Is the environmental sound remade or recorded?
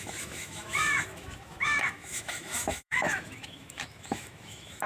remade